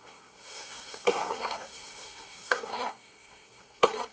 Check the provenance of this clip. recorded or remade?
remade